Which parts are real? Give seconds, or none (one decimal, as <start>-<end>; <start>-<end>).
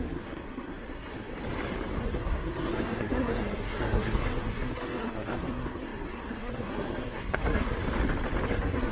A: 1.3-2.0; 7.8-8.5